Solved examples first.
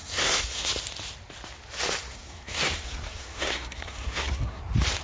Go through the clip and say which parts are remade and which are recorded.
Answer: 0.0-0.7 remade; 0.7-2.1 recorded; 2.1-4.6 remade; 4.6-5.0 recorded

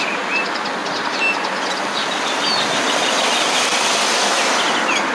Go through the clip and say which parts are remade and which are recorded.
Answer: 0.0-5.1 recorded

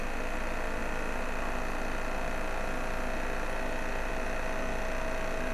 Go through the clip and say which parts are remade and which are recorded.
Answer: 0.0-5.5 recorded

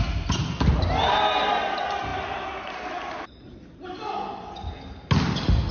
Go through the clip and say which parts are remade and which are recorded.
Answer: 0.0-5.7 recorded

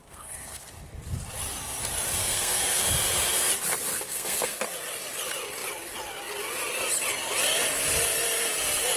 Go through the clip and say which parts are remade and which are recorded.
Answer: 0.0-0.6 remade; 0.6-2.2 recorded; 2.2-2.8 remade; 2.8-3.9 recorded; 3.9-4.6 remade; 4.6-9.0 recorded

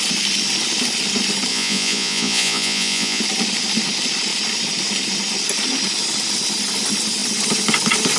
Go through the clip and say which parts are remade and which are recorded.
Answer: 0.0-1.5 recorded; 1.5-3.2 remade; 3.2-8.2 recorded

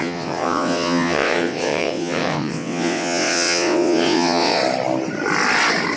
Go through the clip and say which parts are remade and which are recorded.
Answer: 0.0-4.6 remade; 4.6-6.0 recorded

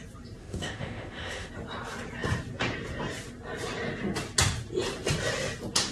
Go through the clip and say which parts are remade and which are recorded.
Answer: 0.0-0.4 recorded; 0.4-1.5 remade; 1.5-5.9 recorded